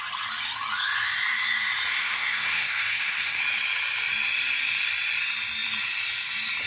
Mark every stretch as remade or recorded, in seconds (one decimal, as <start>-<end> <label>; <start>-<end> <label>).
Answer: 0.0-1.9 recorded; 1.9-3.4 remade; 3.4-6.7 recorded